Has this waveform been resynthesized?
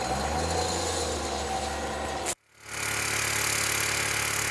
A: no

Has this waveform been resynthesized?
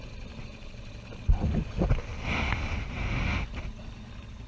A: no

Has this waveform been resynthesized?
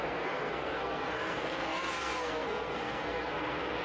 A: yes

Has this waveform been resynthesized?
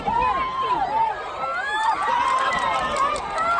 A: yes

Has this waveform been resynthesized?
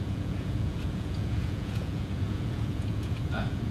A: yes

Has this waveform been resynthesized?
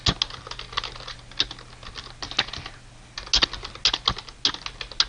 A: no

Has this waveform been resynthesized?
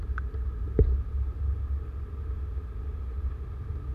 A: no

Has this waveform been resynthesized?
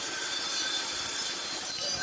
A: no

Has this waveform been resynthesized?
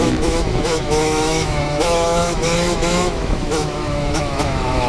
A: yes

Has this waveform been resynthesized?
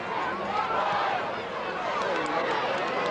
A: no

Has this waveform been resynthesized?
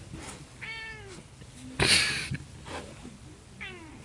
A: no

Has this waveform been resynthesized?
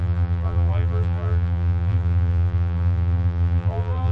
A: yes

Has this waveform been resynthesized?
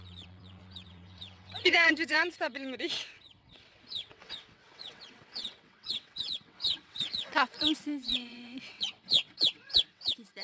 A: yes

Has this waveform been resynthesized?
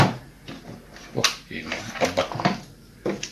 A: no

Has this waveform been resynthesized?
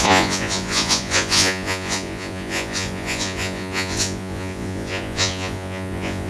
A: yes